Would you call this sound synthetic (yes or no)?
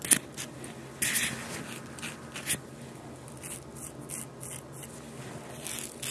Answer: no